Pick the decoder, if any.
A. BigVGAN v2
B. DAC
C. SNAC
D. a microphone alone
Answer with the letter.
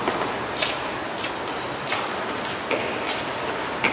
D